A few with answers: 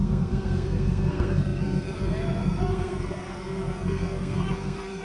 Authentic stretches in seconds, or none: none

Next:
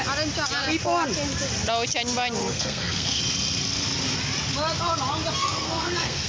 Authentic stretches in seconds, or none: 0.0-2.4; 3.2-5.4

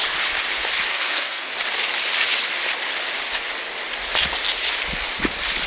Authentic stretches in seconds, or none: 0.0-0.9; 1.5-5.7

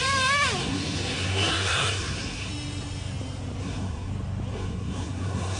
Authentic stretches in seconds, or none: 0.0-0.6; 2.5-3.6; 4.1-4.5

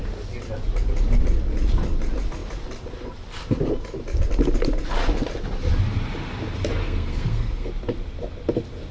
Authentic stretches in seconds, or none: 0.0-6.8; 7.7-8.9